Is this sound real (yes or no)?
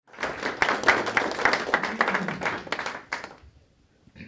yes